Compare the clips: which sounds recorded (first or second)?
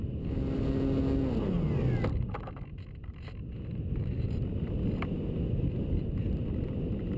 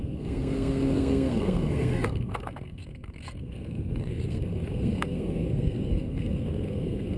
first